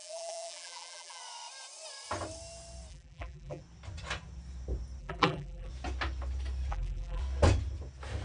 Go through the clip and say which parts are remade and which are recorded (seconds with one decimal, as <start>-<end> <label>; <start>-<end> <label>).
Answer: 0.0-1.2 remade; 1.2-2.9 recorded; 2.9-3.6 remade; 3.6-5.0 recorded; 5.0-5.7 remade; 5.7-6.7 recorded; 6.7-7.2 remade; 7.2-8.2 recorded

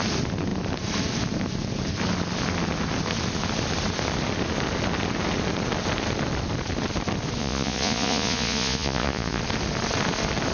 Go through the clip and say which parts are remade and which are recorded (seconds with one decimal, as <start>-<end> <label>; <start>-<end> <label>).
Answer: 0.0-7.4 recorded; 7.4-9.4 remade; 9.4-10.5 recorded

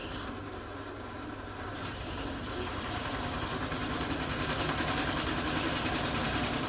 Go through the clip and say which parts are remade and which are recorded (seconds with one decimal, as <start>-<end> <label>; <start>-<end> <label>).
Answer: 0.0-6.7 remade

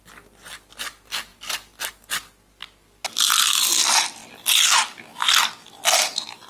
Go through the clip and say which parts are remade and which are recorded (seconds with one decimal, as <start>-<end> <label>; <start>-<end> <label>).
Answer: 0.0-6.5 recorded

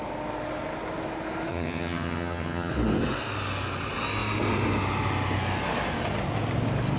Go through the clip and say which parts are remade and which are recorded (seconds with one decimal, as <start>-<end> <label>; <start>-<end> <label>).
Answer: 0.0-1.5 recorded; 1.5-2.7 remade; 2.7-7.0 recorded

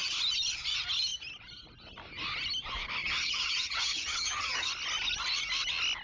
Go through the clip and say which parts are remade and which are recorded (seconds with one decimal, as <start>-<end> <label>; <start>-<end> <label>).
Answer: 0.0-3.0 recorded; 3.0-4.7 remade; 4.7-6.0 recorded

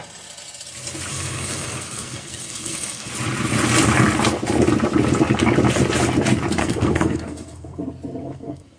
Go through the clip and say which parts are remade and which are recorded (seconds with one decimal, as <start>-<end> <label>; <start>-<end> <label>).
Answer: 0.0-1.1 recorded; 1.1-3.1 remade; 3.1-6.6 recorded; 6.6-7.8 remade; 7.8-8.2 recorded; 8.2-8.8 remade

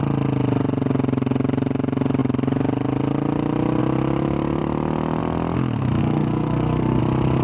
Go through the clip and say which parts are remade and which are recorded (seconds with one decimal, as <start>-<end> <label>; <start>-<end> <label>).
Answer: 0.0-6.0 recorded; 6.0-7.0 remade; 7.0-7.4 recorded